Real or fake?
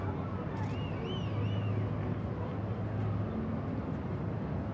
real